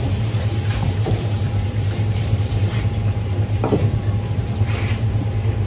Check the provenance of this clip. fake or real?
fake